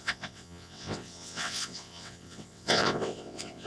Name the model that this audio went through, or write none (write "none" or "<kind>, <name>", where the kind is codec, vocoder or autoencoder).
vocoder, WaveNeXt